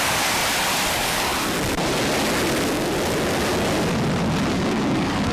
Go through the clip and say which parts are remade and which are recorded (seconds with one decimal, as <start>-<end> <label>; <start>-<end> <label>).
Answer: 0.0-0.4 remade; 0.4-0.9 recorded; 0.9-1.3 remade; 1.3-4.5 recorded; 4.5-5.3 remade